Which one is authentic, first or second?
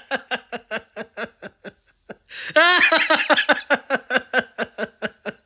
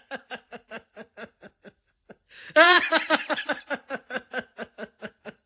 first